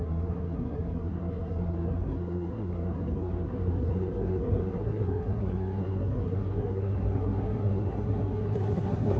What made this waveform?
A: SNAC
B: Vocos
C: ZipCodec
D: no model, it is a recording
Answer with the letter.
A